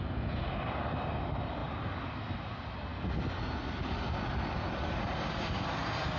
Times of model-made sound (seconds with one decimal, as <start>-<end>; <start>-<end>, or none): none